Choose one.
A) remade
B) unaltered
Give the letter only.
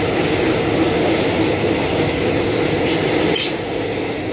B